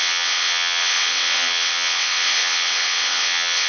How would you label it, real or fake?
fake